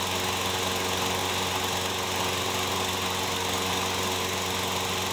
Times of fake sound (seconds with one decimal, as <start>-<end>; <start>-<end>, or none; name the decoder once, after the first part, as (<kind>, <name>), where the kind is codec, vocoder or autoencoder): none